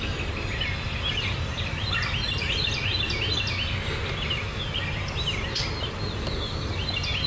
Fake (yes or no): no